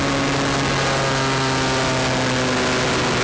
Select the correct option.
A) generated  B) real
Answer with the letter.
B